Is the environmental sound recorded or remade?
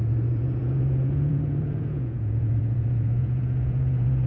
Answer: remade